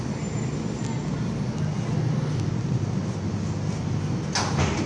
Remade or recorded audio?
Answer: recorded